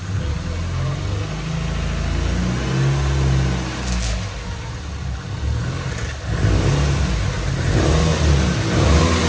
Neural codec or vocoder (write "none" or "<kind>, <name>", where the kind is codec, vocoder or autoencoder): none